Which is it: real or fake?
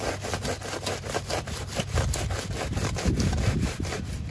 real